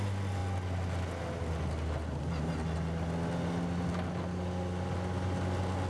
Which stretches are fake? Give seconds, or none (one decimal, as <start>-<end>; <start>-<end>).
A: none